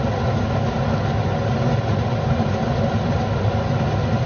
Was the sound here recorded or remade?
recorded